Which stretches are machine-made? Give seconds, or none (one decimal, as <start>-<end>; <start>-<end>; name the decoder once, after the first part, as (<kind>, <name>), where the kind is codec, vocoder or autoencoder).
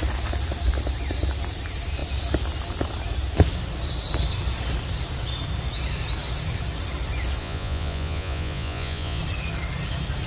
7.4-9.2 (vocoder, Vocos)